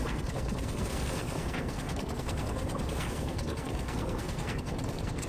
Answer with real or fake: fake